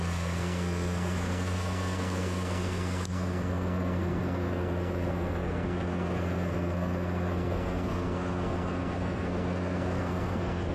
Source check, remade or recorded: remade